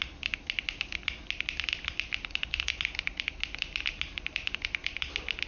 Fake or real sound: real